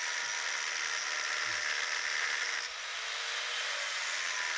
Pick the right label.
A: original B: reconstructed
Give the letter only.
A